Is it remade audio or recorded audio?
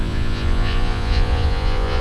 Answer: remade